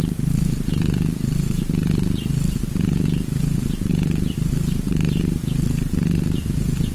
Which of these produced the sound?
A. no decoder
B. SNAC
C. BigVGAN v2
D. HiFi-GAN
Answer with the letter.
C